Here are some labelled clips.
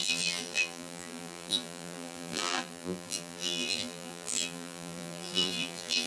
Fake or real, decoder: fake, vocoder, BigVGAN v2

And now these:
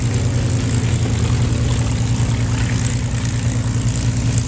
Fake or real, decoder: real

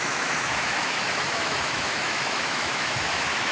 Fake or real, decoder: fake, autoencoder, DAC-VAE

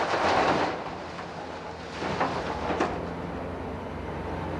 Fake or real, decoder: real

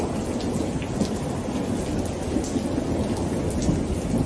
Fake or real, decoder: real